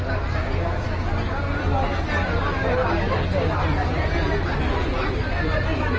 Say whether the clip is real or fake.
real